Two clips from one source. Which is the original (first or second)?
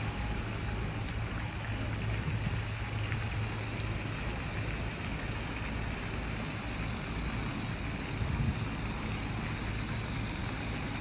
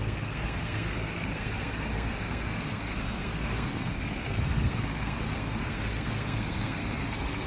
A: first